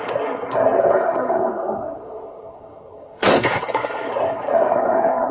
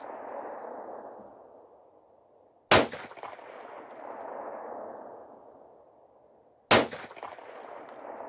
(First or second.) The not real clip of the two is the first